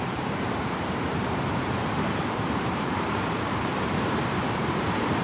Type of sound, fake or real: fake